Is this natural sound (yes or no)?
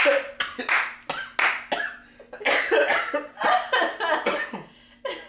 yes